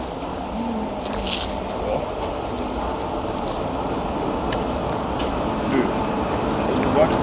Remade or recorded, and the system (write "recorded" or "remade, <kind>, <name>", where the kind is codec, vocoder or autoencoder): recorded